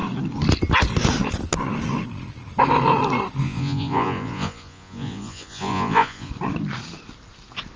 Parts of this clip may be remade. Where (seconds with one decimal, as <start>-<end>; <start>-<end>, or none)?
3.4-6.3